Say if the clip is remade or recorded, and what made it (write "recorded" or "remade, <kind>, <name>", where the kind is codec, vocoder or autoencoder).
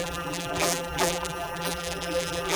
remade, vocoder, BigVGAN v2